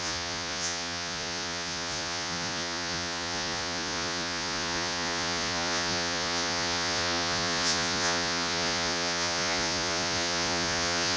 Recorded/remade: remade